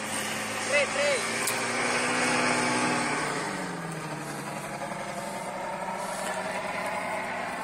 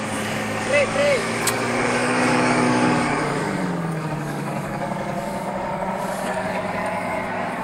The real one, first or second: first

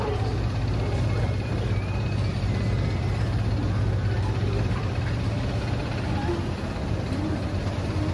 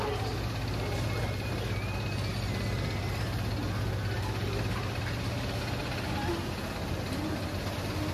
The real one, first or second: second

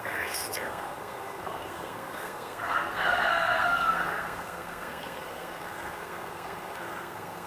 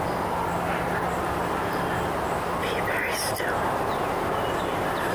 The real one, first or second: second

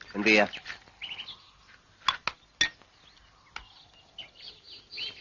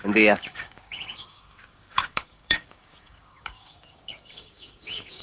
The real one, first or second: first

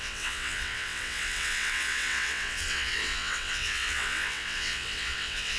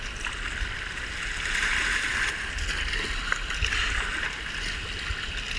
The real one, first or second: second